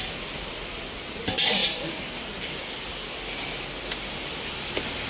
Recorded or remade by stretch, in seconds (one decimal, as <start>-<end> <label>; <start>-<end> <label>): 0.0-5.1 recorded